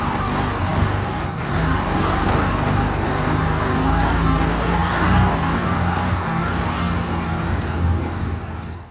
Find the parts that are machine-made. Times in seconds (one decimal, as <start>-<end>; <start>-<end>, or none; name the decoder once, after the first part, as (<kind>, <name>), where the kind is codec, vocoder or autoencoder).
0.0-8.9 (codec, DAC)